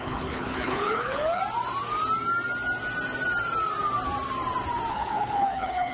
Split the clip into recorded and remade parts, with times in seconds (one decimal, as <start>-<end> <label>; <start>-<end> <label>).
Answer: 0.0-1.4 remade; 1.4-4.9 recorded; 4.9-5.9 remade